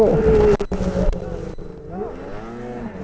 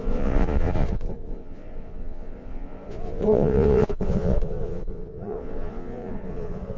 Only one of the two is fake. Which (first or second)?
second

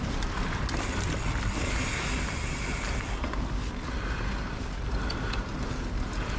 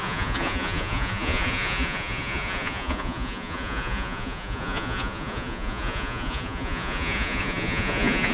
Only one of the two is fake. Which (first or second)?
second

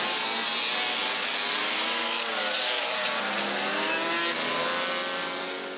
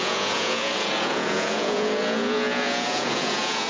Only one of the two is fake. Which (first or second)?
second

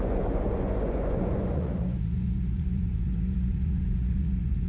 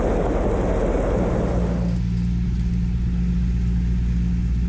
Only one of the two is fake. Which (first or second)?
first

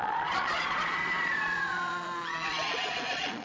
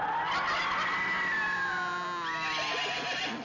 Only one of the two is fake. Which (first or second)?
first